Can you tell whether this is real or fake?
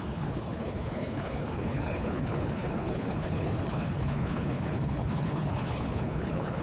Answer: fake